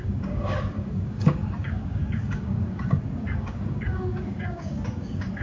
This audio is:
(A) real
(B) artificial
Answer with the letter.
B